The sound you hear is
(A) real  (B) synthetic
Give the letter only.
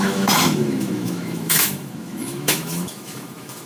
B